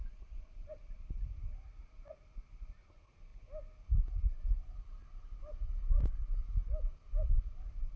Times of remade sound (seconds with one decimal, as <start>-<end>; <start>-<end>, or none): none